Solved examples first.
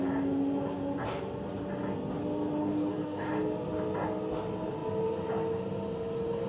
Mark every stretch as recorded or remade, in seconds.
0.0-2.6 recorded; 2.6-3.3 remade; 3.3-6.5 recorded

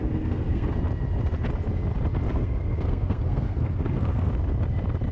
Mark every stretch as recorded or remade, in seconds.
0.0-0.7 remade; 0.7-2.3 recorded; 2.3-4.3 remade; 4.3-5.1 recorded

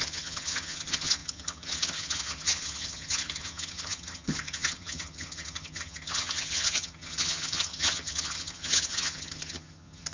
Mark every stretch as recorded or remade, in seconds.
0.0-10.1 remade

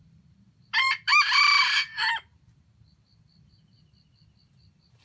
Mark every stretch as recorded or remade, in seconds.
0.0-5.0 recorded

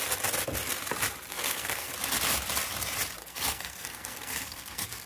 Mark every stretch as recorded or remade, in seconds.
0.0-1.3 recorded; 1.3-1.9 remade; 1.9-3.2 recorded; 3.2-5.1 remade

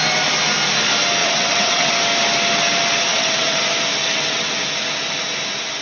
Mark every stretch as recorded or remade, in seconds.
0.0-1.2 recorded; 1.2-1.9 remade; 1.9-3.1 recorded; 3.1-3.6 remade; 3.6-4.0 recorded; 4.0-4.5 remade; 4.5-5.8 recorded

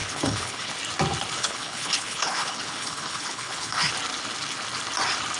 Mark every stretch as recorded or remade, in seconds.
0.0-0.7 remade; 0.7-1.4 recorded; 1.4-3.9 remade; 3.9-5.4 recorded

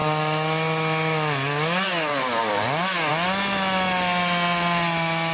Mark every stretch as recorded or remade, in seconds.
0.0-5.3 recorded